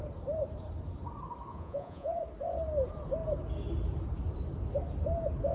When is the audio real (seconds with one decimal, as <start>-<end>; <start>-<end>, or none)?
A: 0.0-1.5; 2.2-5.5